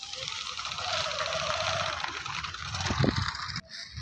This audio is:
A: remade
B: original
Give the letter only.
B